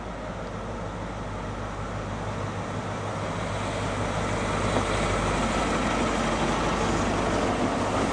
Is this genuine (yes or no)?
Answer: yes